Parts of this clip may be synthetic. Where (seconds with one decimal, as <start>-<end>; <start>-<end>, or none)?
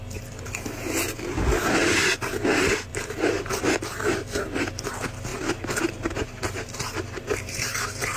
2.9-3.6